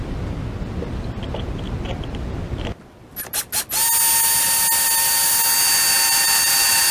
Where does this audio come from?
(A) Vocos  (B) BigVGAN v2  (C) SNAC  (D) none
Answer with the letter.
D